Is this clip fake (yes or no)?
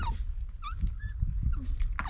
no